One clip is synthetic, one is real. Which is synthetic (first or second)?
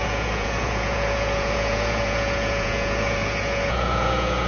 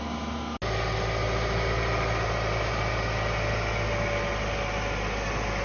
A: first